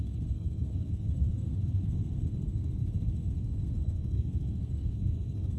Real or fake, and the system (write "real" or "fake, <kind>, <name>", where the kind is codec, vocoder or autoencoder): fake, codec, SNAC